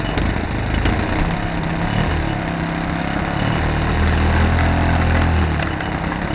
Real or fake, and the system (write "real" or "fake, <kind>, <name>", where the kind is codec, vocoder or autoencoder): real